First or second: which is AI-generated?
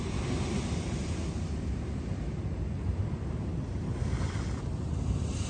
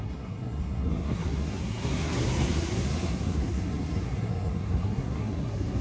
second